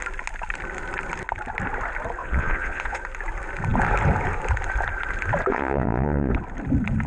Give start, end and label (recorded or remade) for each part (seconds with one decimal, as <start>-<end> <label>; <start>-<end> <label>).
0.0-2.2 recorded; 2.2-3.0 remade; 3.0-5.5 recorded; 5.5-6.3 remade; 6.3-7.1 recorded